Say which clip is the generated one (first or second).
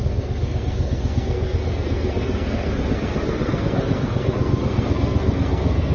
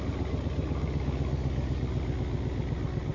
first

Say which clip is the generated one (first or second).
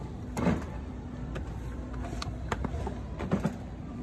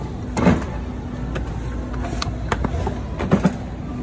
first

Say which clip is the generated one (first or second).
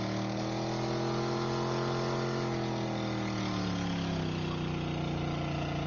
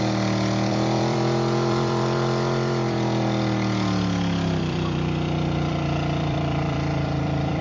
second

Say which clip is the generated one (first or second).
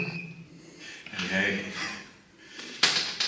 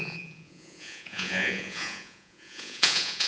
second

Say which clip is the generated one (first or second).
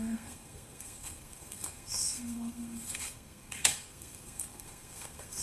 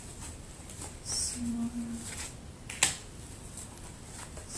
first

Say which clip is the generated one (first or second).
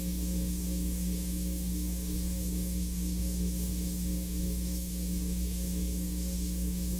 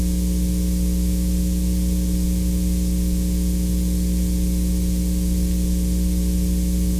first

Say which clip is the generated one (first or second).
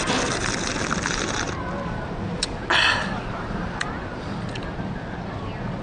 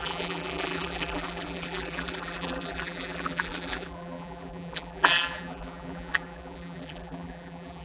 second